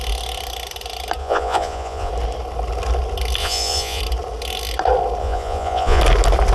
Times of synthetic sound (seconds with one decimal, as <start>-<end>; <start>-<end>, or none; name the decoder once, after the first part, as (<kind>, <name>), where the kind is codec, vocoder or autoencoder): 1.2-2.1 (vocoder, Vocos); 3.4-4.0; 5.2-6.0